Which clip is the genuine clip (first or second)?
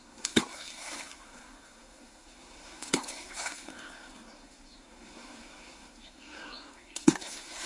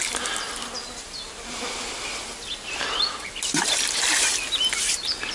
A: second